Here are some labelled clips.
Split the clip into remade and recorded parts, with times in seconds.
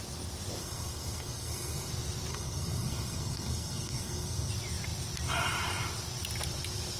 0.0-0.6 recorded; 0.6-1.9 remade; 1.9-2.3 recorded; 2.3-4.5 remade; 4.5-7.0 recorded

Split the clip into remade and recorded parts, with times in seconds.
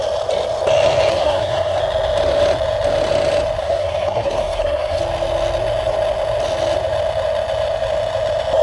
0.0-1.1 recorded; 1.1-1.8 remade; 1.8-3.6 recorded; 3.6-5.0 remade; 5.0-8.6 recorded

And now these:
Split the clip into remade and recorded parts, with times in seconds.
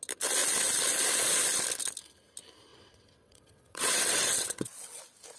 0.0-2.7 recorded; 2.7-5.0 remade; 5.0-5.4 recorded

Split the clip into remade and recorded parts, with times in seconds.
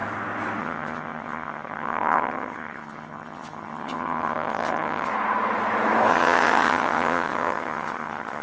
0.0-0.6 recorded; 0.6-5.1 remade; 5.1-6.1 recorded; 6.1-8.4 remade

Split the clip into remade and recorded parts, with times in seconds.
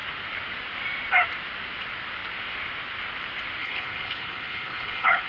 0.0-3.6 recorded; 3.6-5.3 remade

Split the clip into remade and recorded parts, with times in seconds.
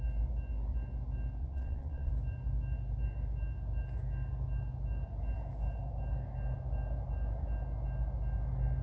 0.0-1.4 recorded; 1.4-2.1 remade; 2.1-8.8 recorded